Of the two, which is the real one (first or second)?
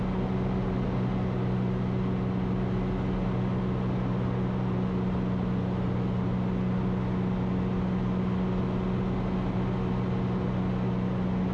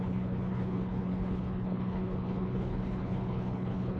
first